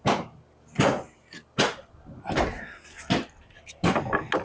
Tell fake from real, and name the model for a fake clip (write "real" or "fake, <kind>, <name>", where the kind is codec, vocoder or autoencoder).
real